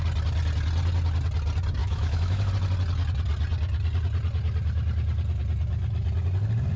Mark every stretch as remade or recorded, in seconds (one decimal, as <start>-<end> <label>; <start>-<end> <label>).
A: 0.0-1.8 recorded; 1.8-2.5 remade; 2.5-6.8 recorded